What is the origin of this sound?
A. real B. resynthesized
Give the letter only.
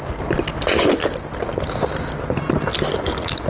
A